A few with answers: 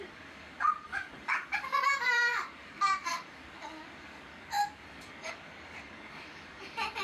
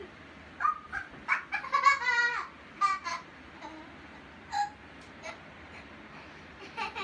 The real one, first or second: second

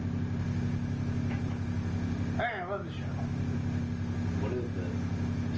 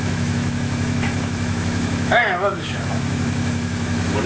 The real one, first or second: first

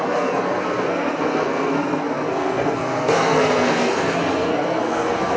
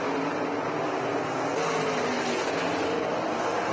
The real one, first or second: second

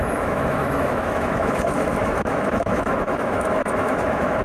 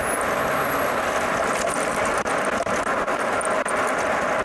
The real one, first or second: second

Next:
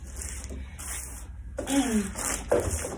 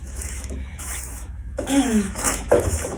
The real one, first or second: first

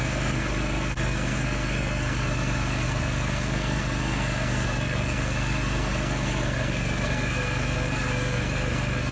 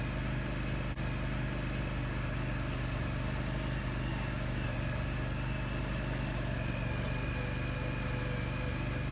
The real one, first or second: second